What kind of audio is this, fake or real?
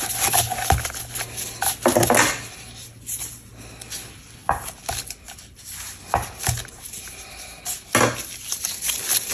real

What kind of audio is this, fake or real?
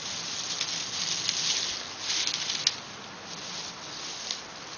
real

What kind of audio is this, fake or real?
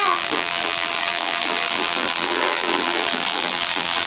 fake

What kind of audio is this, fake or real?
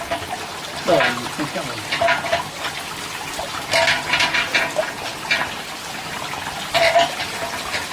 real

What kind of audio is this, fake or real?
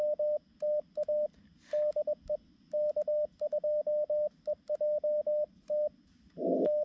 real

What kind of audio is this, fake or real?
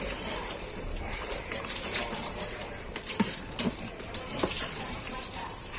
fake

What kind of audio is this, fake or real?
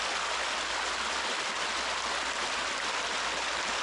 real